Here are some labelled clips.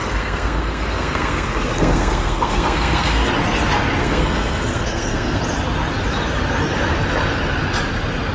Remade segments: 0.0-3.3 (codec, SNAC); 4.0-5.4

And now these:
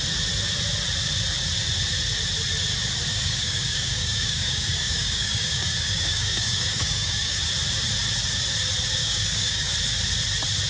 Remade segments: 3.1-7.4 (codec, DAC); 9.0-9.7

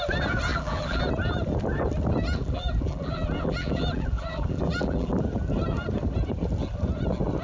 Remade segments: 0.5-1.1 (vocoder, BigVGAN v2); 2.4-5.2

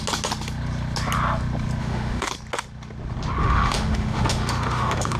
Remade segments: 1.8-2.3 (autoencoder, DAC-VAE); 3.4-5.2

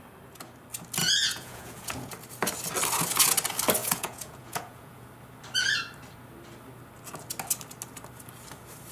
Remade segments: 1.0-2.1 (vocoder, Vocos); 3.8-5.1

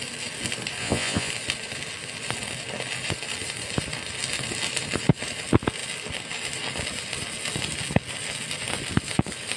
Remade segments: 0.8-1.3 (vocoder, Vocos)

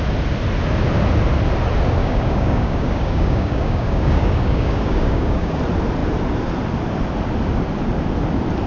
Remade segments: 2.0-5.6 (codec, DAC)